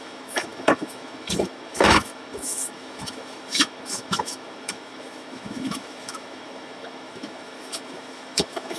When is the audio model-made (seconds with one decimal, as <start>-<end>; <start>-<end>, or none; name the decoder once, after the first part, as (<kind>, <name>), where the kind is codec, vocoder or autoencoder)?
0.0-8.8 (autoencoder, DAC-VAE)